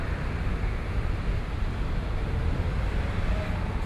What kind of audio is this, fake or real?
real